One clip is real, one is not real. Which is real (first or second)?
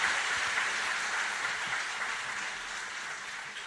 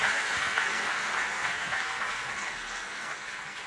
first